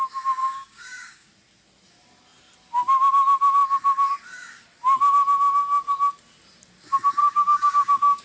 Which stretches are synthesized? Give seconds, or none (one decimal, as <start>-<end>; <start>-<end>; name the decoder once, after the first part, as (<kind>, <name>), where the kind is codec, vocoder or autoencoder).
0.4-1.3 (codec, DAC); 7.2-8.2